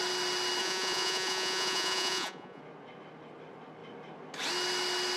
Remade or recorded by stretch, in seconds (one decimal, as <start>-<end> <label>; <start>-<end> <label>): 0.0-0.6 recorded; 0.6-2.6 remade; 2.6-5.2 recorded